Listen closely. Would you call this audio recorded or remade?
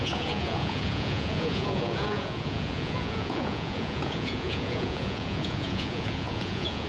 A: remade